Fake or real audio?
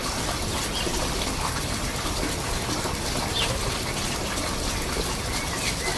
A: real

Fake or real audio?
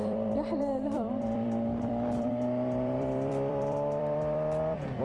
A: fake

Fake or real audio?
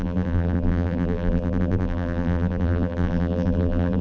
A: fake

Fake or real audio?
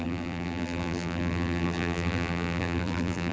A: fake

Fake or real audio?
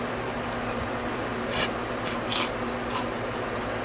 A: real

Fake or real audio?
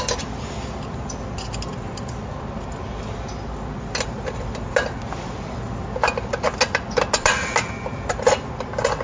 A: real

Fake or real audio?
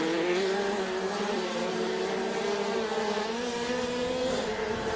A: fake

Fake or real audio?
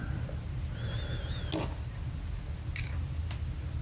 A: real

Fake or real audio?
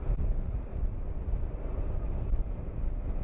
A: real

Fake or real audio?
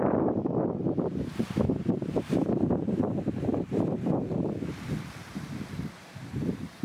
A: fake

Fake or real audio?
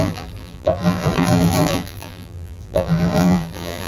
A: fake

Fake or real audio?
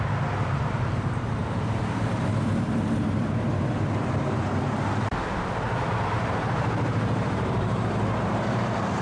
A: fake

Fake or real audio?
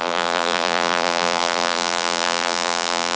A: fake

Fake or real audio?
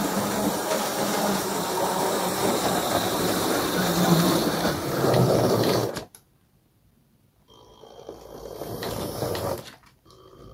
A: fake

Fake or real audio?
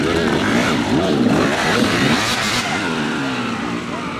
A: fake